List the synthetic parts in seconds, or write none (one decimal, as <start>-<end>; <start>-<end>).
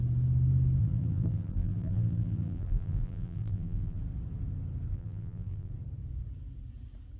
0.8-4.0; 4.9-5.7